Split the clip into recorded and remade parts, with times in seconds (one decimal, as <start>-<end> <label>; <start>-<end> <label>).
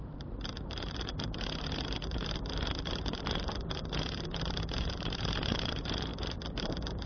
0.0-7.1 remade